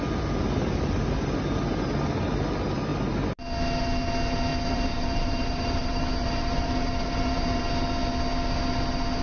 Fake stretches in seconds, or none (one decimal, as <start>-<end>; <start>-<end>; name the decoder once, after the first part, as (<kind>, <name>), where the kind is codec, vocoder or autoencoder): 4.5-7.6 (vocoder, BigVGAN v2)